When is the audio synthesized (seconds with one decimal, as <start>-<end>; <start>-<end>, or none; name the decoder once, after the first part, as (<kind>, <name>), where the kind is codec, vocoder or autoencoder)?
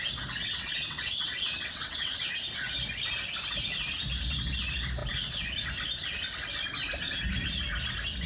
0.4-2.2 (vocoder, WaveNeXt)